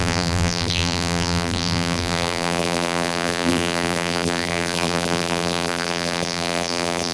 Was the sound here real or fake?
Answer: fake